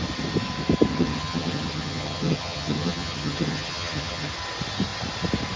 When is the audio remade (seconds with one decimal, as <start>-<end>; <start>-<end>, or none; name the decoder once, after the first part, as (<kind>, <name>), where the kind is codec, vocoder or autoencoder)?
0.9-4.3 (vocoder, HiFi-GAN)